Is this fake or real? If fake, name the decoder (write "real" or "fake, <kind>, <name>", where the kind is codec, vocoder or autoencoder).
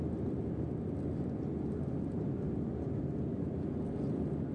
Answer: real